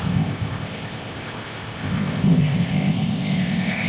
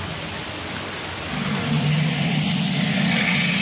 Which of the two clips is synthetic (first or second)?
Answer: first